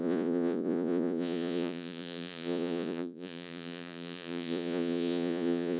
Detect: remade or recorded remade